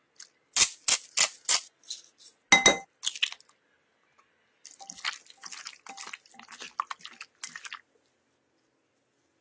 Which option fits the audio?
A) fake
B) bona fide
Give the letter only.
B